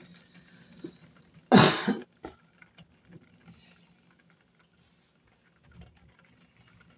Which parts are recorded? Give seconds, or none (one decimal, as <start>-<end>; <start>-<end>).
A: 0.0-7.0